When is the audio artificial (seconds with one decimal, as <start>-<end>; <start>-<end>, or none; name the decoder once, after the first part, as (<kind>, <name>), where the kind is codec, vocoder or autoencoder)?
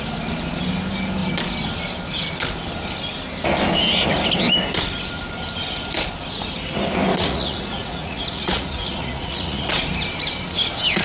7.1-9.7 (vocoder, Vocos)